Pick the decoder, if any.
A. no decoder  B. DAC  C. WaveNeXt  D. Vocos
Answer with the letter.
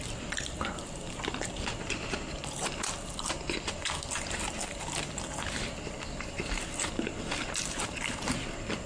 A